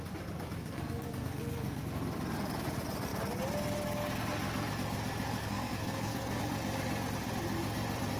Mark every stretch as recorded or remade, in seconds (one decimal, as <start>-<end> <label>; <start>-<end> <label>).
0.0-0.6 recorded; 0.6-1.8 remade; 1.8-5.4 recorded; 5.4-6.4 remade; 6.4-8.2 recorded